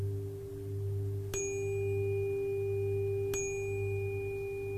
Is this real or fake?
real